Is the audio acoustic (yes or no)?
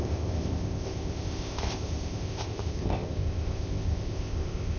no